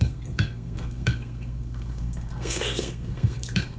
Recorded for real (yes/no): no